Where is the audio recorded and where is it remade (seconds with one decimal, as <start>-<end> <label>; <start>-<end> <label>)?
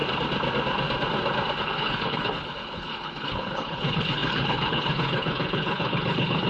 0.0-1.6 recorded; 1.6-6.5 remade